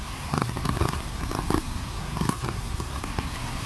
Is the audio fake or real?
fake